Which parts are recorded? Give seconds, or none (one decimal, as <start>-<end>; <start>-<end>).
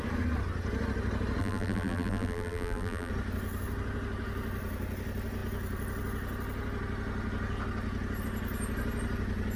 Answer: 0.0-1.4; 3.1-9.6